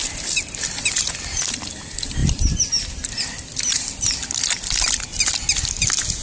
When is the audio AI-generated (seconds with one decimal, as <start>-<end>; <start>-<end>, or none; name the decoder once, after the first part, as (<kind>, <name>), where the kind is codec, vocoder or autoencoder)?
none

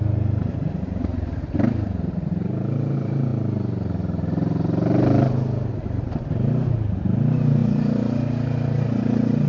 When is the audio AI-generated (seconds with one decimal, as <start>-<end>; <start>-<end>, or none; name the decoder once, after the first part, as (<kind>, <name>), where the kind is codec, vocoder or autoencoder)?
none

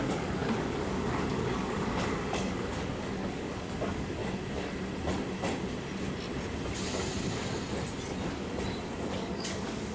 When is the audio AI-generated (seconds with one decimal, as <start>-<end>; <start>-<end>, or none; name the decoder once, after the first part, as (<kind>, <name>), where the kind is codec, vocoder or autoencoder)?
0.0-4.2 (codec, DAC); 8.8-9.9

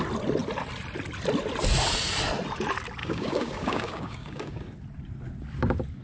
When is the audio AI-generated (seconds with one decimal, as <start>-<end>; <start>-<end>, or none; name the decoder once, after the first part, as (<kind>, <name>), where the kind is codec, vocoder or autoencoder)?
3.0-4.6 (codec, DAC)

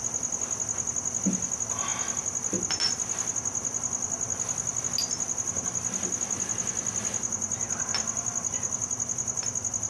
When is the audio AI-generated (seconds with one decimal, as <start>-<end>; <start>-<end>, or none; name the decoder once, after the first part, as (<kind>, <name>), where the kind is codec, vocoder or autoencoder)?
none

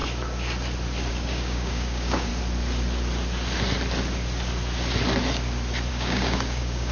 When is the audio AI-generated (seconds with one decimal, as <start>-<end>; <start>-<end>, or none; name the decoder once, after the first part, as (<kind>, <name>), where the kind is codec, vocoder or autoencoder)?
1.1-2.3 (codec, DAC); 5.9-6.9

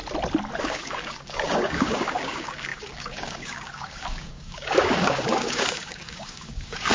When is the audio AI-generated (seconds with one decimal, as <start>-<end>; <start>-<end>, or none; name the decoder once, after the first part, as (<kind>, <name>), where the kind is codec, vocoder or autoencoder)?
0.6-6.9 (codec, DAC)

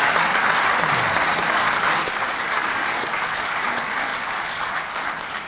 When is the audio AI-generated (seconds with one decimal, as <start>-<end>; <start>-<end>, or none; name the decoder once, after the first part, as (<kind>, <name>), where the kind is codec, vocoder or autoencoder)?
0.0-0.4 (codec, DAC); 1.5-5.5